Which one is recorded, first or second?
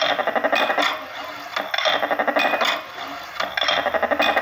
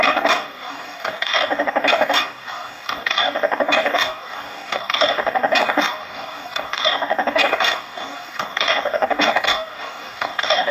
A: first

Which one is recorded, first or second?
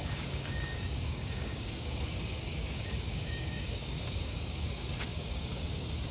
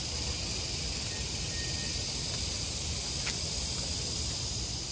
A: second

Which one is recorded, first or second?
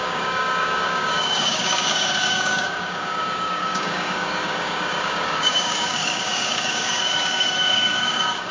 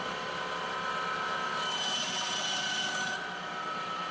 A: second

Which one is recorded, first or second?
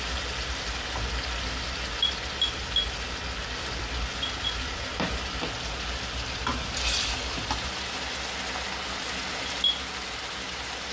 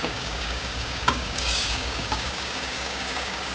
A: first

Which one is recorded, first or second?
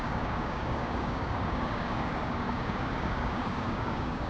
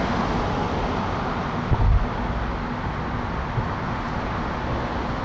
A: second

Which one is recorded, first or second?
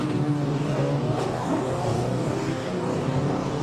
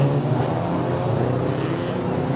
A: second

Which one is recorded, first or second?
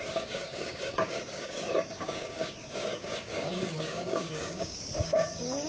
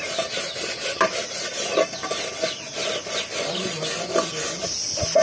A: second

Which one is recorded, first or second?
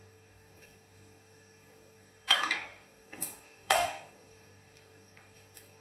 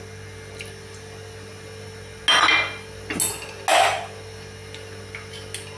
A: second